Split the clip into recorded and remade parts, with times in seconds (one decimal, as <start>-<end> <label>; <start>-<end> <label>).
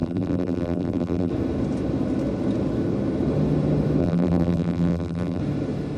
0.0-1.3 remade; 1.3-4.0 recorded; 4.0-5.4 remade; 5.4-6.0 recorded